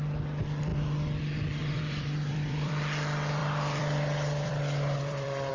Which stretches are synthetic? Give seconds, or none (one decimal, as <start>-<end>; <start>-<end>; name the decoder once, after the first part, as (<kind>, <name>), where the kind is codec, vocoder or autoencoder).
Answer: 1.6-2.7 (vocoder, BigVGAN v2); 3.4-5.5